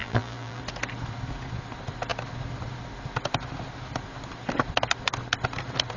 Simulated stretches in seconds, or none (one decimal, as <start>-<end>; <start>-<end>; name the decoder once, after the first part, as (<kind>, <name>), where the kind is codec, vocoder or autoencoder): 0.0-0.6 (vocoder, BigVGAN v2)